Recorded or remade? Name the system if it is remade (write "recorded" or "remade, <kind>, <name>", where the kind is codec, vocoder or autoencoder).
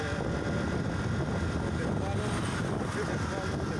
recorded